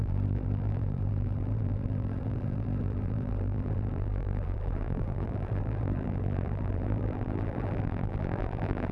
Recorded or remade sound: remade